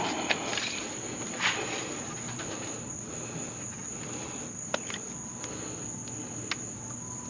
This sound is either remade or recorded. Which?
recorded